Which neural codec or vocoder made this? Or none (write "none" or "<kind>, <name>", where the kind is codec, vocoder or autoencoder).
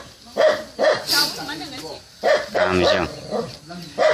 none